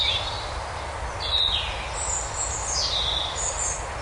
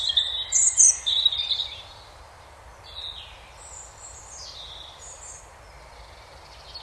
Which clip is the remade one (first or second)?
second